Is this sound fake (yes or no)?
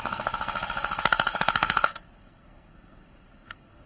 yes